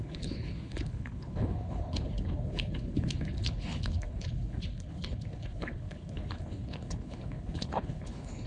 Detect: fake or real fake